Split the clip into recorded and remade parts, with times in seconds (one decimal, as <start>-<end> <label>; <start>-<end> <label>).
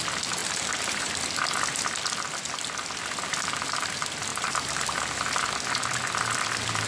0.0-0.4 recorded; 0.4-1.1 remade; 1.1-4.3 recorded; 4.3-5.3 remade; 5.3-6.9 recorded